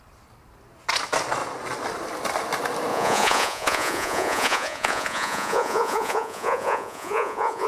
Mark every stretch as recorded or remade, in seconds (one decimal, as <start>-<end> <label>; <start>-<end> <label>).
0.0-2.9 recorded; 2.9-7.7 remade